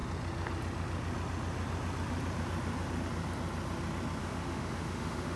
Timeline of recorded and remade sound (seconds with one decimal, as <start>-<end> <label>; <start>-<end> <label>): 0.0-4.2 recorded; 4.2-5.4 remade